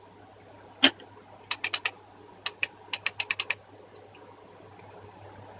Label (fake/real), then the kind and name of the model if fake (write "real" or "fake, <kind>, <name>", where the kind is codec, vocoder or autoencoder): real